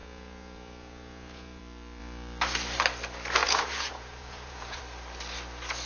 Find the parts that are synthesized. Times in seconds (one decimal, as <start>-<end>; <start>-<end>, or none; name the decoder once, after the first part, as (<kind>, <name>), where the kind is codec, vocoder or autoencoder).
0.0-1.6 (vocoder, Vocos); 3.4-4.8